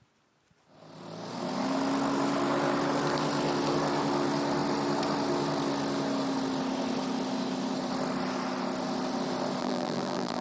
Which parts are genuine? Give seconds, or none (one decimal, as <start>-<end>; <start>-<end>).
0.0-9.6